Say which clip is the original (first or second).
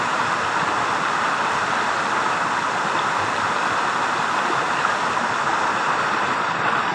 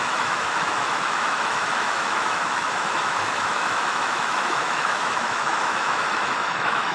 first